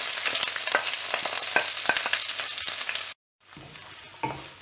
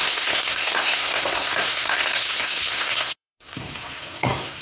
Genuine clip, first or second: first